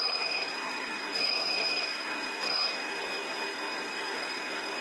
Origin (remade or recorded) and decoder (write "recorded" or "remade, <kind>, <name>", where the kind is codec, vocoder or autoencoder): remade, codec, SNAC